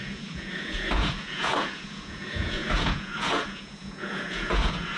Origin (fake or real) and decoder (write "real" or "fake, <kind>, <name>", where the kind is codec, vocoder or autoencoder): fake, vocoder, Vocos